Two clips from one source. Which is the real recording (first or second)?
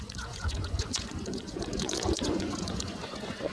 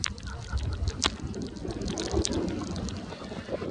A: second